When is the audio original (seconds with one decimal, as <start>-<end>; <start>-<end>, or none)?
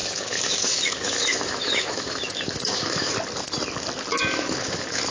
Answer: 3.1-4.1